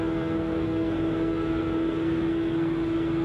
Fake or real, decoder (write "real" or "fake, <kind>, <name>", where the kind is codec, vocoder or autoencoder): fake, codec, SNAC